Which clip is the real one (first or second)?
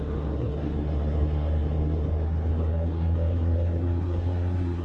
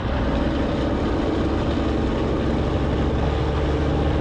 second